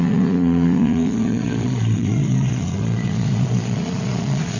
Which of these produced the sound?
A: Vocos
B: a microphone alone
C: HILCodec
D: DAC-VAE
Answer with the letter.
A